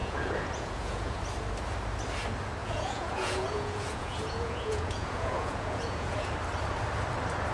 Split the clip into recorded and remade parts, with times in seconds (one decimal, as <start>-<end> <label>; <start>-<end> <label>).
0.0-1.2 remade; 1.2-2.6 recorded; 2.6-6.3 remade; 6.3-7.5 recorded